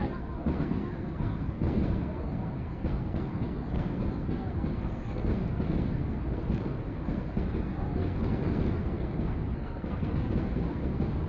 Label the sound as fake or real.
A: fake